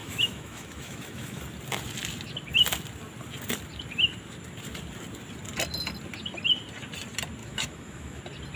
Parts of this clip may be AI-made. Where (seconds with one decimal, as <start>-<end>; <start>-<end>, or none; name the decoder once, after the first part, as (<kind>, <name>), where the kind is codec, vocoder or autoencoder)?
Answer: 0.0-1.4 (autoencoder, DAC-VAE); 7.4-8.2